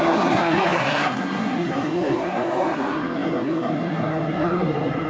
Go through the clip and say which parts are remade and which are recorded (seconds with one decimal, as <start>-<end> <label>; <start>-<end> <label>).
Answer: 0.0-5.1 remade